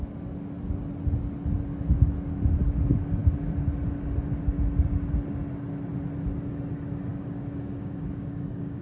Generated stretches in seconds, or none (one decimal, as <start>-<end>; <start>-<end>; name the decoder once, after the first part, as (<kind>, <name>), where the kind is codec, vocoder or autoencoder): 7.1-8.8 (codec, DAC)

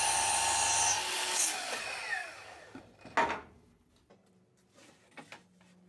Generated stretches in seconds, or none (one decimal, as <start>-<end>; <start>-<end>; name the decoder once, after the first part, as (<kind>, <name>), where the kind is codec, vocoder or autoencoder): 1.0-1.8 (codec, DAC); 2.2-2.8

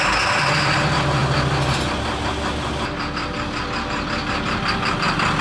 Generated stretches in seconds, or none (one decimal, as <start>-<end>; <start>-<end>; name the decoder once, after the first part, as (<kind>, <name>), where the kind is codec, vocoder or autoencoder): none

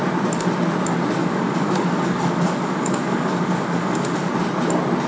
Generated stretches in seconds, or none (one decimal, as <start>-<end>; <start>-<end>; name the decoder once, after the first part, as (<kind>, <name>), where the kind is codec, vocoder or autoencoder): 1.2-4.3 (codec, DAC)